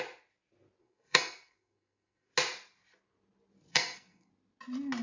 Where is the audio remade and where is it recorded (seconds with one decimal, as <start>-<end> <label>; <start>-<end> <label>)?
0.0-0.8 recorded; 0.8-2.3 remade; 2.3-3.7 recorded; 3.7-4.3 remade; 4.3-5.0 recorded